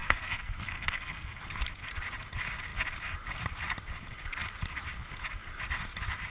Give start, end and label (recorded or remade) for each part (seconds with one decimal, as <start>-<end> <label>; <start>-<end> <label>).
0.0-1.4 remade; 1.4-6.3 recorded

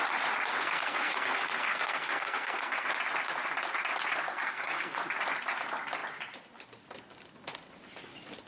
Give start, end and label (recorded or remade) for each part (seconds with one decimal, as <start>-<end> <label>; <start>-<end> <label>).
0.0-0.5 recorded; 0.5-2.9 remade; 2.9-4.3 recorded; 4.3-5.0 remade; 5.0-8.5 recorded

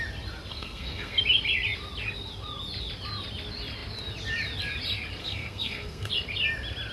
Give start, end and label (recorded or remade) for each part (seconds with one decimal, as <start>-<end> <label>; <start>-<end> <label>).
0.0-0.5 recorded; 0.5-1.2 remade; 1.2-5.2 recorded; 5.2-6.1 remade; 6.1-6.9 recorded

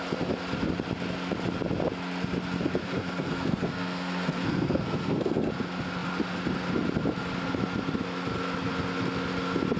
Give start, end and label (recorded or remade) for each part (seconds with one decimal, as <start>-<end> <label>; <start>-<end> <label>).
0.0-2.8 recorded; 2.8-5.5 remade; 5.5-9.8 recorded

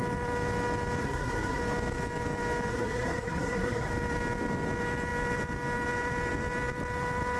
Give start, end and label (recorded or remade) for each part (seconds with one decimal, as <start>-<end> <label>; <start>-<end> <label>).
0.0-1.0 recorded; 1.0-1.6 remade; 1.6-2.7 recorded; 2.7-3.9 remade; 3.9-7.4 recorded

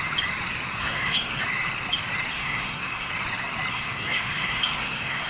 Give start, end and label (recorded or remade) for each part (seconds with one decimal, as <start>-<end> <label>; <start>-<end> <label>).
0.0-0.8 recorded; 0.8-1.4 remade; 1.4-2.3 recorded; 2.3-3.1 remade; 3.1-3.7 recorded; 3.7-5.3 remade

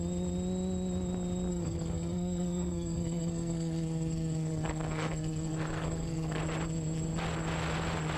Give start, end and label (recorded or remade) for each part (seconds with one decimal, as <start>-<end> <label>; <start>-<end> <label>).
0.0-1.5 recorded; 1.5-6.4 remade; 6.4-8.2 recorded